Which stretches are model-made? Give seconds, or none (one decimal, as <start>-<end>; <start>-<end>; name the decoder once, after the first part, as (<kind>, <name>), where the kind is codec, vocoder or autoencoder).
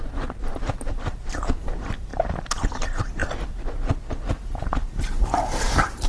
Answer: 0.0-3.2 (vocoder, BigVGAN v2); 4.6-6.1